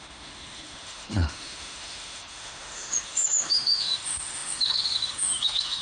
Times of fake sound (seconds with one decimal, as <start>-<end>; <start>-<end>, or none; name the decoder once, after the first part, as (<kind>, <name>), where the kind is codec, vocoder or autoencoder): 0.0-5.8 (autoencoder, DAC-VAE)

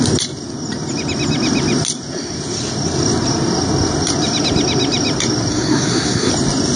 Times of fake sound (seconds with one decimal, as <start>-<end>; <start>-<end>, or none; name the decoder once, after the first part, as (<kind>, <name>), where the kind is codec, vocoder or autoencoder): 5.5-6.3 (codec, SNAC)

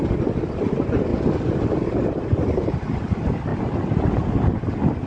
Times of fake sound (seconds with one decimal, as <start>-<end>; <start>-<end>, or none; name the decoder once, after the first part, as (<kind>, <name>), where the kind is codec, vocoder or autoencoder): 1.1-3.1 (vocoder, BigVGAN v2); 3.5-4.3